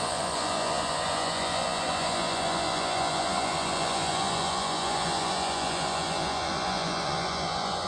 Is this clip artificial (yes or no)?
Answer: yes